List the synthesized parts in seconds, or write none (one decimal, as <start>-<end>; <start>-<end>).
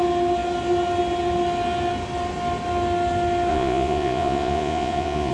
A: 3.5-5.3